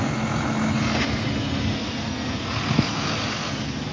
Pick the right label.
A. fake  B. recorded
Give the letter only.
B